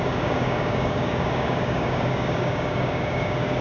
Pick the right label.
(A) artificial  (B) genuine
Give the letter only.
A